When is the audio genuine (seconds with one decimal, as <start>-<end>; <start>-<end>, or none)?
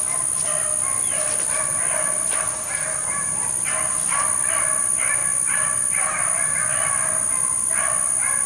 0.0-8.5